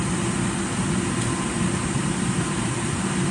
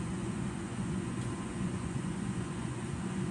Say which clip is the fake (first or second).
second